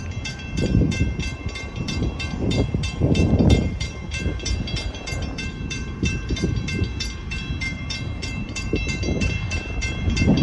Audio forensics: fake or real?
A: fake